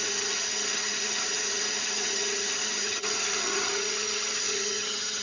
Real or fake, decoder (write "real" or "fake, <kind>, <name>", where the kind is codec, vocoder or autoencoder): fake, vocoder, HiFi-GAN